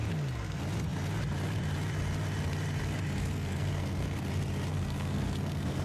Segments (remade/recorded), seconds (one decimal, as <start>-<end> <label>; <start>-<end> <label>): 0.0-3.2 recorded; 3.2-4.3 remade; 4.3-4.7 recorded; 4.7-5.8 remade